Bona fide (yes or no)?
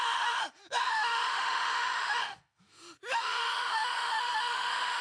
no